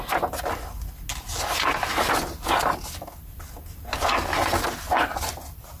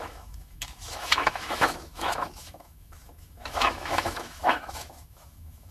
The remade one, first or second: second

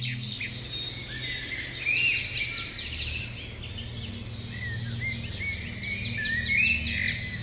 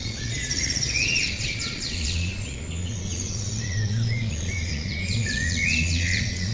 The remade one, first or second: second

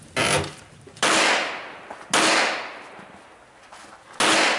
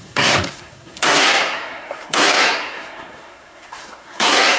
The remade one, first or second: second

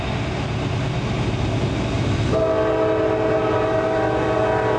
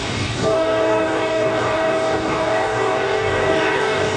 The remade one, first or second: second